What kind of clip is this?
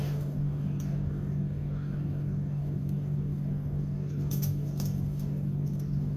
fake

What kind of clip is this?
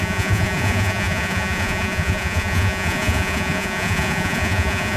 fake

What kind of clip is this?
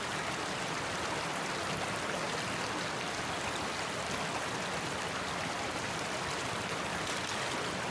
real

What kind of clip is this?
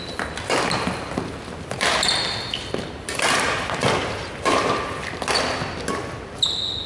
real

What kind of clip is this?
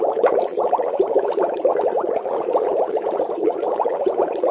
fake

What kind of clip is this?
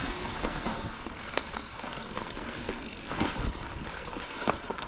fake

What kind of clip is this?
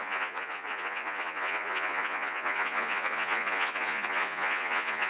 fake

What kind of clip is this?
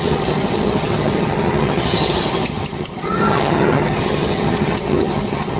fake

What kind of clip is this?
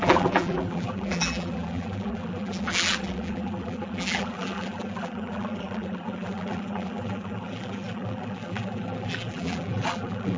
fake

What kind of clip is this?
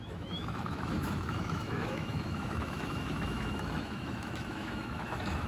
fake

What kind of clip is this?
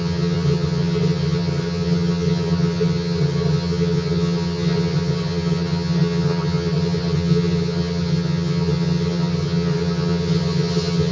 fake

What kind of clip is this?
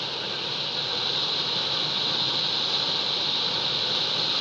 real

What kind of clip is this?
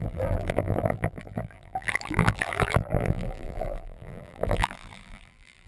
fake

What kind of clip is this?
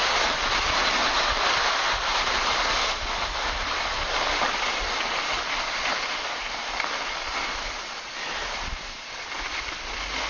real